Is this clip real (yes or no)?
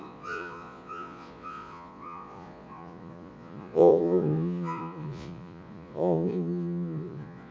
no